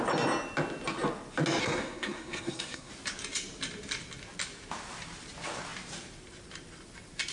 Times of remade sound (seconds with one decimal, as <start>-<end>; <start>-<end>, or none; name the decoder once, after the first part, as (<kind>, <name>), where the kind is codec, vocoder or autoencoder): 1.6-2.9 (codec, SNAC)